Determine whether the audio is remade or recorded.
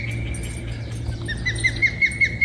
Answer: recorded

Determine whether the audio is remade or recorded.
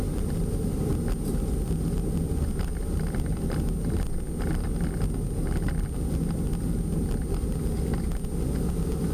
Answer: recorded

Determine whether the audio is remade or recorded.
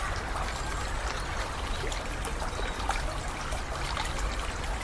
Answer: recorded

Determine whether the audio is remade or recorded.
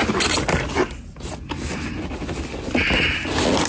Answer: recorded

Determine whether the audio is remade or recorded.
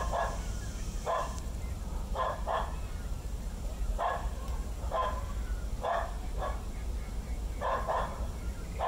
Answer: remade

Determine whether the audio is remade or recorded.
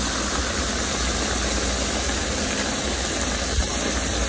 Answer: recorded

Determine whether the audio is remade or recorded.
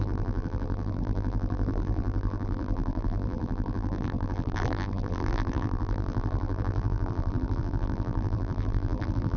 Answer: remade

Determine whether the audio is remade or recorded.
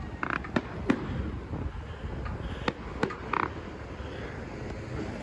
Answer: recorded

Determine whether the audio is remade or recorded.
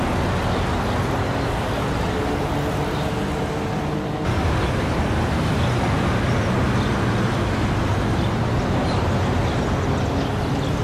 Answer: recorded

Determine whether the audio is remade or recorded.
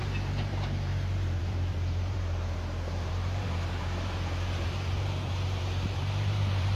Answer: remade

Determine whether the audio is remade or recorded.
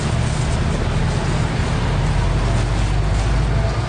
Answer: recorded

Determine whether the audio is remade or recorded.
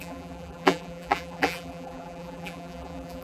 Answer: remade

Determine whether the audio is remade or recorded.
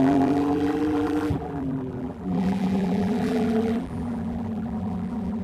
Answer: remade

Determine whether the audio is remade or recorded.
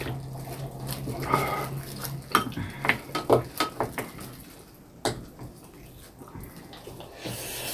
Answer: recorded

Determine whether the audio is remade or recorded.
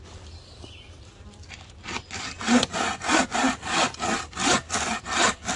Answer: recorded